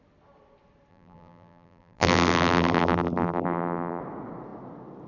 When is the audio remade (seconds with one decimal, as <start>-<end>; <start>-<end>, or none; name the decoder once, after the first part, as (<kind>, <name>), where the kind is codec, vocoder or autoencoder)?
0.9-4.0 (vocoder, BigVGAN v2)